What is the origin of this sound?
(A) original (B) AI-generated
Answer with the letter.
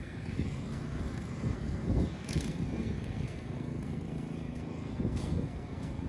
B